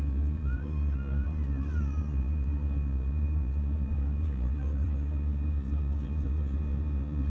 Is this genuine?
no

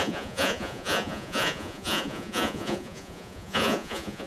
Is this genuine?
no